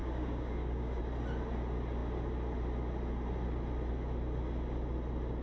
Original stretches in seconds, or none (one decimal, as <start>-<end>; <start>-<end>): 1.0-5.4